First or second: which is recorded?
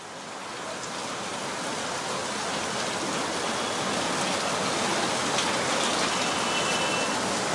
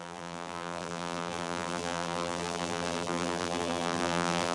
first